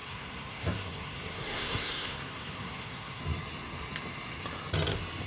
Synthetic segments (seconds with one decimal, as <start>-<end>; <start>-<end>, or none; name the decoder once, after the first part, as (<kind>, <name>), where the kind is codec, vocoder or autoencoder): 0.0-3.2 (codec, SNAC)